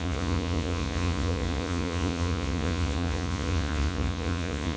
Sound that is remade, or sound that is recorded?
remade